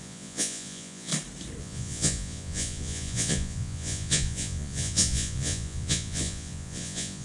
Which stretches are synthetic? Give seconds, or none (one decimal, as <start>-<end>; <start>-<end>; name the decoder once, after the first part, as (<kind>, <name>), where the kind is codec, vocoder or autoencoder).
0.0-1.1 (vocoder, Vocos); 1.6-7.2